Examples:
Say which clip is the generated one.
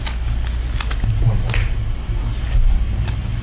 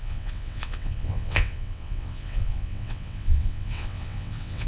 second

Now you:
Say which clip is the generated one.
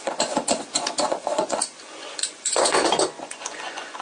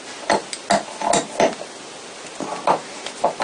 first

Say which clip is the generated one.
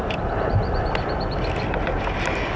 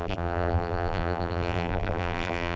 second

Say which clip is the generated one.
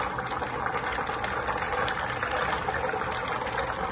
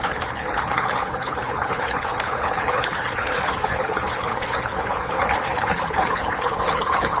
second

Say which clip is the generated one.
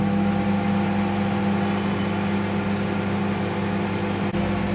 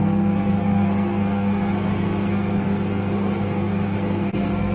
second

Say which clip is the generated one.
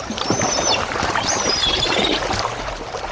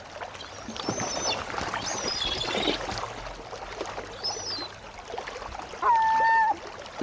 first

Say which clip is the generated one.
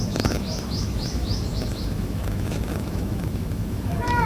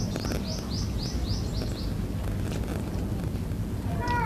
first